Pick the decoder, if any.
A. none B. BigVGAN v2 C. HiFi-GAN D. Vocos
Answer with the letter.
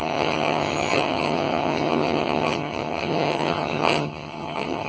C